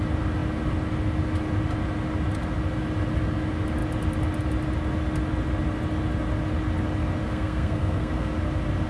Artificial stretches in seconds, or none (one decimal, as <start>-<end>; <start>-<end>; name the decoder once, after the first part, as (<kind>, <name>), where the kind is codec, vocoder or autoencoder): 7.2-8.3 (codec, SNAC)